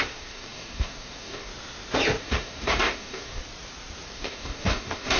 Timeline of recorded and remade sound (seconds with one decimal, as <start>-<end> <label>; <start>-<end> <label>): 0.0-1.5 remade; 1.5-2.2 recorded; 2.2-3.4 remade; 3.4-4.1 recorded; 4.1-5.2 remade